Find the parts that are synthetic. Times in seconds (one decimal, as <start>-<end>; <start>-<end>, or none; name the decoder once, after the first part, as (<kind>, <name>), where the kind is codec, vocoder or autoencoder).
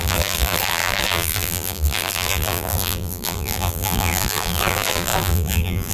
0.0-5.9 (vocoder, BigVGAN v2)